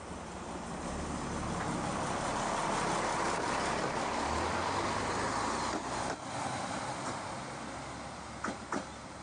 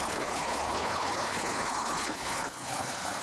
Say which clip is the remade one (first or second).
second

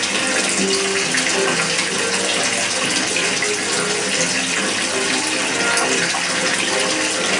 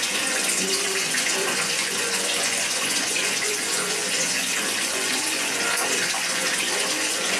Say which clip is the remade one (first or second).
second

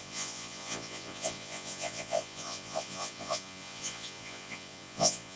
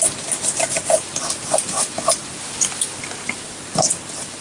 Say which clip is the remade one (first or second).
first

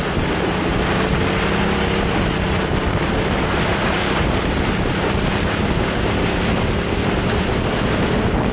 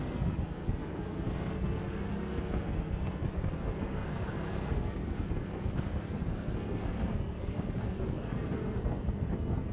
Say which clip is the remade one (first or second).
second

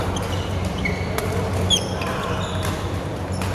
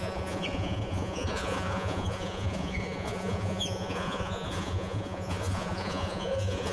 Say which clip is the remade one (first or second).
second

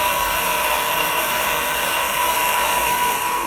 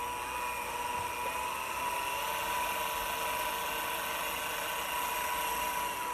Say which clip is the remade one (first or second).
first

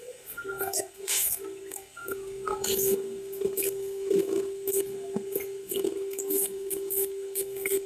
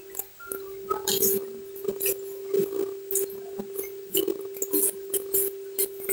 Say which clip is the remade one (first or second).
first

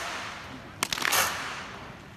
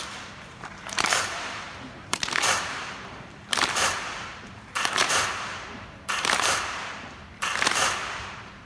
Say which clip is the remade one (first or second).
second